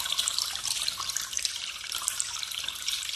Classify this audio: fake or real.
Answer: fake